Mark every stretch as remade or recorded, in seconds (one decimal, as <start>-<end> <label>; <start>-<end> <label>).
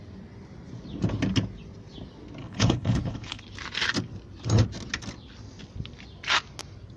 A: 0.0-2.4 recorded; 2.4-3.4 remade; 3.4-7.0 recorded